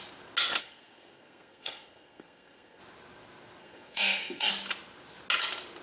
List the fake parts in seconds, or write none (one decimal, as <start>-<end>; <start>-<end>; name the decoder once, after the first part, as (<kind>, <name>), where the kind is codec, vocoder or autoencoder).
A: 0.6-2.8 (codec, SNAC); 3.6-4.5

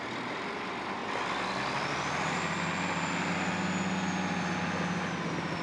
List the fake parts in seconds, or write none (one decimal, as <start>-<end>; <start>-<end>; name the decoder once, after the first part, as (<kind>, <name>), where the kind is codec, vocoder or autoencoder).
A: none